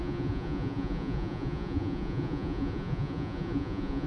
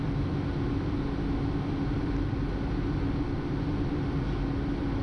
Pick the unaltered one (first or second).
second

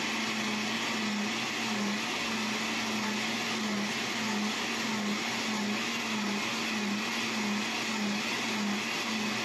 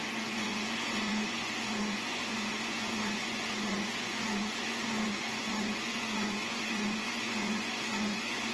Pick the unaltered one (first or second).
first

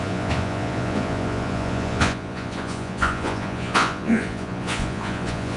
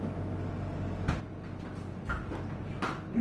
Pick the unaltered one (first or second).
second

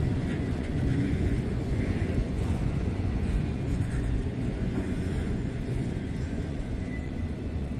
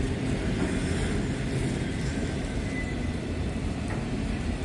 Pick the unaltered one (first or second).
second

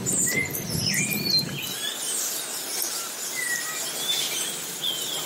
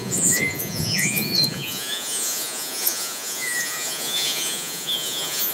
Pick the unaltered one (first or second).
first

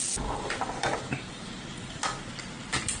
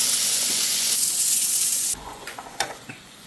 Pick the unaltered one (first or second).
first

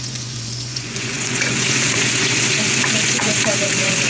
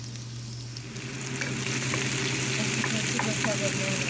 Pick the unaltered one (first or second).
second